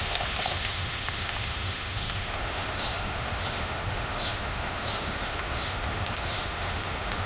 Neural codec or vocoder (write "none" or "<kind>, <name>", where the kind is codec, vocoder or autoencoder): autoencoder, DAC-VAE